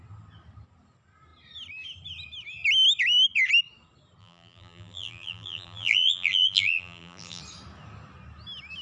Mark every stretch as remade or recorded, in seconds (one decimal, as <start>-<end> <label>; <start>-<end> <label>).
0.0-4.2 recorded; 4.2-7.4 remade; 7.4-8.8 recorded